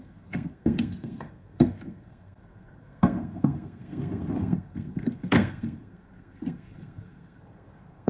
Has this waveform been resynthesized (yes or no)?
yes